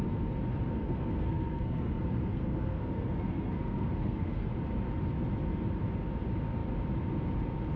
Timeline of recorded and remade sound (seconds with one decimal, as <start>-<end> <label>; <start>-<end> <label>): 0.0-0.8 recorded; 0.8-4.5 remade; 4.5-7.8 recorded